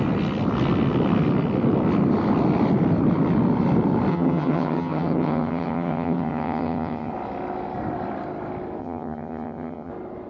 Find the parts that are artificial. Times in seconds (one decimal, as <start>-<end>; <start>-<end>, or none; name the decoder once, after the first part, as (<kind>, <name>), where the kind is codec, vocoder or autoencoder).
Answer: 4.1-7.1 (vocoder, HiFi-GAN); 8.8-9.9